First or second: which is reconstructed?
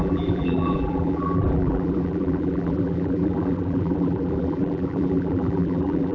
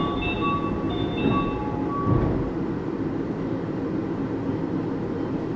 first